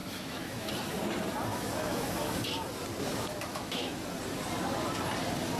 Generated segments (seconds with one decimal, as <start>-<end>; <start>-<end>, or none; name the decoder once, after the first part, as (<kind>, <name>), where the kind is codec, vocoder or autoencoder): 0.0-0.7 (autoencoder, DAC-VAE); 1.5-2.1; 3.1-3.9